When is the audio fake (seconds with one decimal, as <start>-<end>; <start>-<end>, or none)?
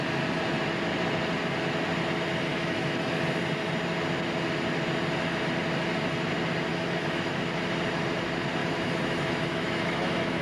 2.5-3.1; 6.7-7.4; 8.6-10.4